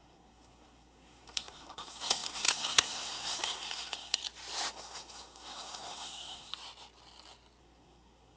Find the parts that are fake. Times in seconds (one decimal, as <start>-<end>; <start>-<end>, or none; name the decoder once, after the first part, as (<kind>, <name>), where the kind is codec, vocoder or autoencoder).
0.0-4.2 (codec, SNAC); 4.7-6.5; 7.6-8.4